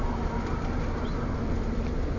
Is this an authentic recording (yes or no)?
yes